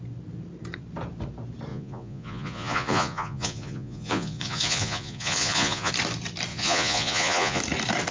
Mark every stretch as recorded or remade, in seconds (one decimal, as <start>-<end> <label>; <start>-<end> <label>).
0.0-1.7 recorded; 1.7-5.9 remade; 5.9-6.5 recorded; 6.5-7.6 remade; 7.6-8.1 recorded